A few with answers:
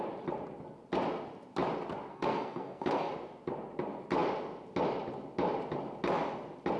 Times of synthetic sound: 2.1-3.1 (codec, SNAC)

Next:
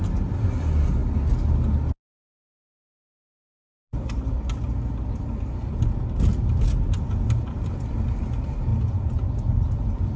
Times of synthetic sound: none

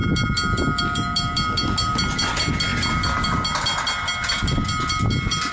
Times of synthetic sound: none